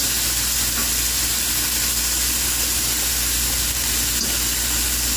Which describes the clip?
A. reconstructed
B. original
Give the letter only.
B